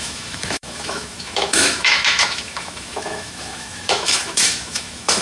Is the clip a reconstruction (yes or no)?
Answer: yes